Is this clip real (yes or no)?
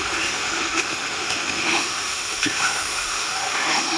no